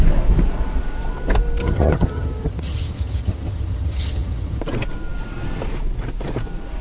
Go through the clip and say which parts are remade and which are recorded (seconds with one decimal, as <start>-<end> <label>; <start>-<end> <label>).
0.0-1.6 recorded; 1.6-4.6 remade; 4.6-6.8 recorded